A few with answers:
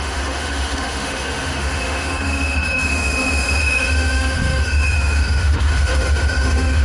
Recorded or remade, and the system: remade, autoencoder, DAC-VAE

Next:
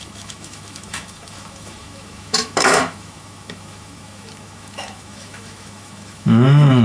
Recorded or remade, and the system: remade, autoencoder, DAC-VAE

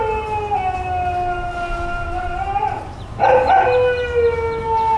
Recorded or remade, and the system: recorded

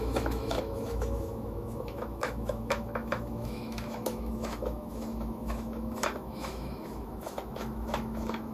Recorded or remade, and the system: remade, autoencoder, DAC-VAE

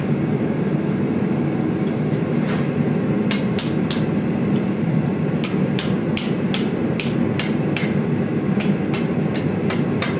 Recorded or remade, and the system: recorded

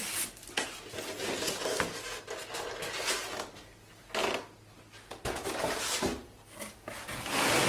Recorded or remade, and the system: recorded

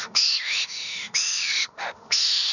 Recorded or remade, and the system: remade, autoencoder, DAC-VAE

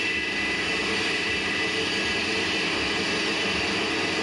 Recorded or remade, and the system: recorded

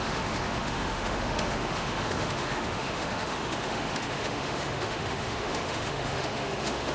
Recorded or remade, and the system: remade, autoencoder, DAC-VAE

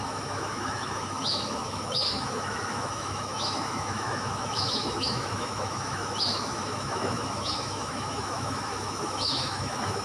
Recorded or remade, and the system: remade, autoencoder, DAC-VAE